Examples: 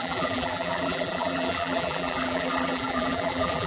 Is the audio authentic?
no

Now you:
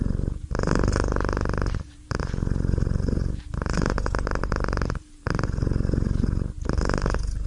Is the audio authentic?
no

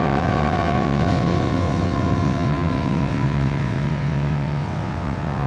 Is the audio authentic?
no